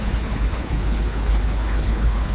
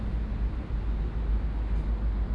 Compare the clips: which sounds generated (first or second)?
first